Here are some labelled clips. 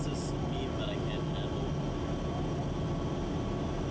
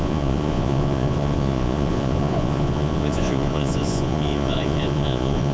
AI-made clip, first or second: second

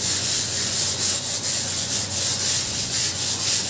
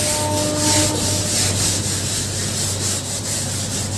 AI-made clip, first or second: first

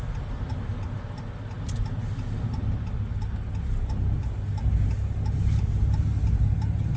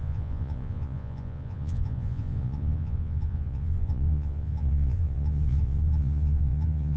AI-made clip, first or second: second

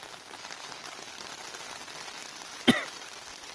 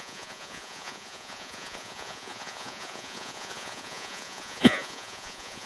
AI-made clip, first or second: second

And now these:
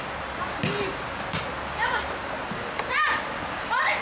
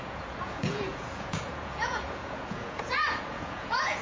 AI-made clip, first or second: second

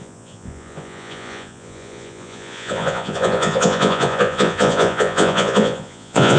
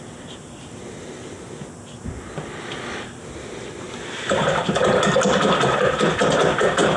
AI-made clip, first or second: first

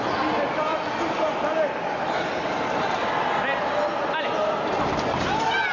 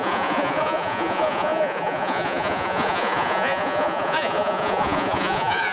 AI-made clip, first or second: second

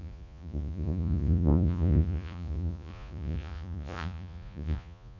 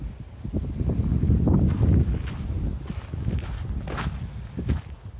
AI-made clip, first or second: first